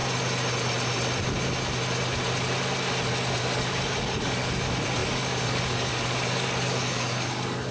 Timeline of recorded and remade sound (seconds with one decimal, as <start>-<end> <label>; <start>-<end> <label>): 0.0-3.4 recorded; 3.4-7.7 remade